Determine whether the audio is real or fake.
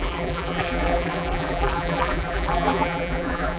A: fake